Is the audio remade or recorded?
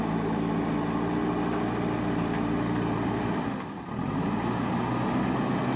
recorded